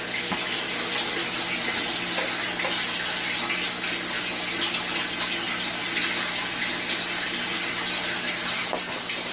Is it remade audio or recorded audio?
recorded